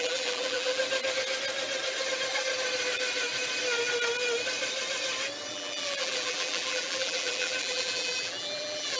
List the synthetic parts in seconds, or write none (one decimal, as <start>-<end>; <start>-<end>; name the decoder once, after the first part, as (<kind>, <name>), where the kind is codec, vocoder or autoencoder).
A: 0.0-0.8 (vocoder, BigVGAN v2); 5.5-9.0